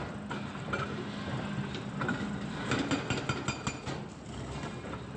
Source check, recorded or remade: recorded